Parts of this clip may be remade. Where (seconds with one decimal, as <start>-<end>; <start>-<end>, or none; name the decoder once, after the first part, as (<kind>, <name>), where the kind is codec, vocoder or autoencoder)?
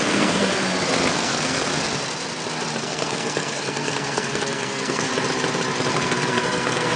0.0-0.5 (codec, SNAC); 1.1-1.7; 2.8-5.1; 5.9-7.0